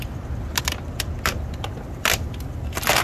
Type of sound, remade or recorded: recorded